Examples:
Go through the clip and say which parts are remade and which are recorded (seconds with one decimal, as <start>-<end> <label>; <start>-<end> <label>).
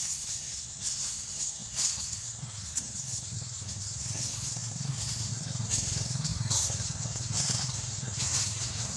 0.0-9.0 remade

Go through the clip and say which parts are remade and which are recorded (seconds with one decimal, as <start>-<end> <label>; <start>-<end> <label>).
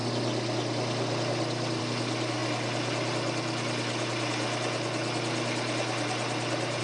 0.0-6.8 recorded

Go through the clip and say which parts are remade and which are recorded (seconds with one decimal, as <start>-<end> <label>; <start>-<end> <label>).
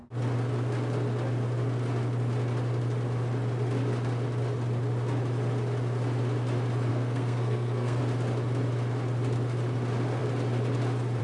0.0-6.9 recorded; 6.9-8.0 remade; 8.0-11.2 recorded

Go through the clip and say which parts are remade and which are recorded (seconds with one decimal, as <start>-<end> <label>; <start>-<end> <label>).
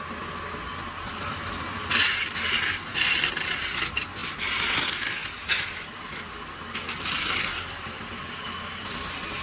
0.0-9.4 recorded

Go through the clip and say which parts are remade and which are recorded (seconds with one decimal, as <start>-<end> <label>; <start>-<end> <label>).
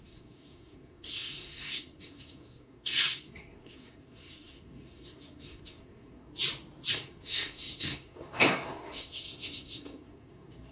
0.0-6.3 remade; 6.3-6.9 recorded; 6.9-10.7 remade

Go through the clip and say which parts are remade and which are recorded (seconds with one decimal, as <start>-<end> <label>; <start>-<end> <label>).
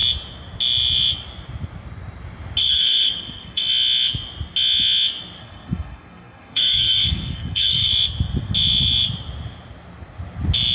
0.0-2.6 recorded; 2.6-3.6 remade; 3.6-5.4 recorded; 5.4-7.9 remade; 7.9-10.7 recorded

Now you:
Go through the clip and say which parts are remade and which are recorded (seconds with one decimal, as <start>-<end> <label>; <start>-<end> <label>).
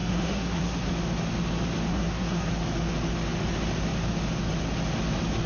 0.0-0.9 remade; 0.9-1.9 recorded; 1.9-2.5 remade; 2.5-5.5 recorded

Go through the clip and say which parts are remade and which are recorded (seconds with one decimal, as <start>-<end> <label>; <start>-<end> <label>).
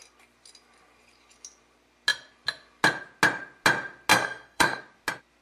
0.0-4.1 recorded; 4.1-4.8 remade; 4.8-5.4 recorded